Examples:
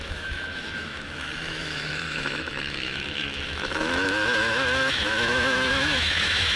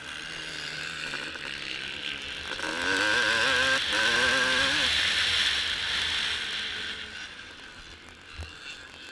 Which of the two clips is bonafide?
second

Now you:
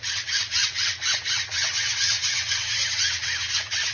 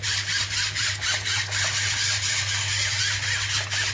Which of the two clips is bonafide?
second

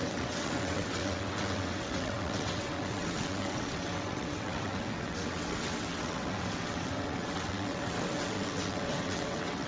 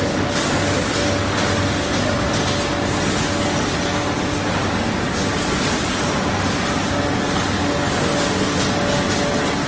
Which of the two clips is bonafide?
second